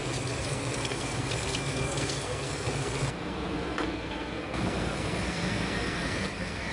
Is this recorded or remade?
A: remade